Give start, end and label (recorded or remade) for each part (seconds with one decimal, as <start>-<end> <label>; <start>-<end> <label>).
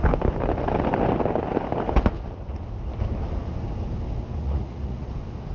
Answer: 0.0-4.4 recorded; 4.4-5.1 remade; 5.1-5.5 recorded